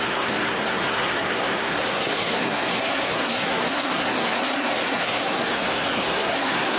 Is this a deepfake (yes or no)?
yes